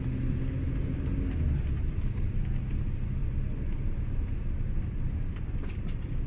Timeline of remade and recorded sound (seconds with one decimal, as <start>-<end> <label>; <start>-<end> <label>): 0.0-6.3 recorded